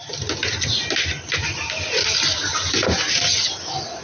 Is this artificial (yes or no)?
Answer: no